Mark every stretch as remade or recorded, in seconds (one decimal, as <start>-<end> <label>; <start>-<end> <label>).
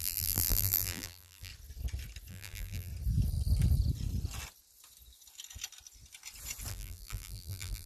0.0-1.5 remade; 1.5-2.3 recorded; 2.3-2.9 remade; 2.9-6.7 recorded; 6.7-7.9 remade